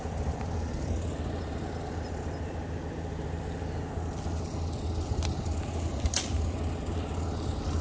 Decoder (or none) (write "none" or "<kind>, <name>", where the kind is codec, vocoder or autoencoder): none